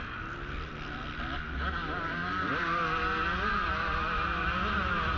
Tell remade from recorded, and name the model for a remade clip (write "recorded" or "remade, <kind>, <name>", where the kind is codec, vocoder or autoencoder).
recorded